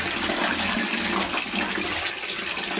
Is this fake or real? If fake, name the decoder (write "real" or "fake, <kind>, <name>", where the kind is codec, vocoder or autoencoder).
real